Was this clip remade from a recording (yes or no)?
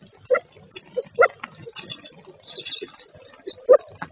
no